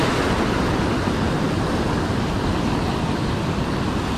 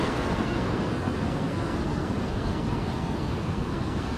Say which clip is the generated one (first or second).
second